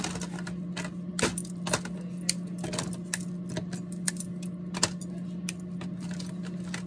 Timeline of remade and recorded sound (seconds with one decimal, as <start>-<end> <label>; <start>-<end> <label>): 0.0-6.9 recorded